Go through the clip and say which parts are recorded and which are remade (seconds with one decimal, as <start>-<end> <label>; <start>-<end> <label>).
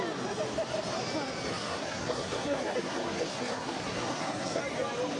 0.0-1.5 recorded; 1.5-4.6 remade; 4.6-5.2 recorded